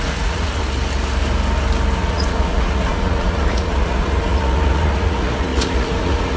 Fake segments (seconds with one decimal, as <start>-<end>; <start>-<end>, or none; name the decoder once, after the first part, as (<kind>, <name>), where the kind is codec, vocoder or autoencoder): 0.0-0.6 (vocoder, Vocos); 2.0-6.4